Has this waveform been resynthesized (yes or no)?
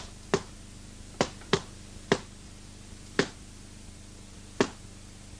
no